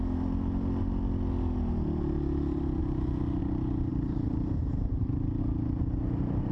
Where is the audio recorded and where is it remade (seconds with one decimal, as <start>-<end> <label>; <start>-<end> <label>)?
0.0-3.9 recorded; 3.9-5.4 remade; 5.4-6.5 recorded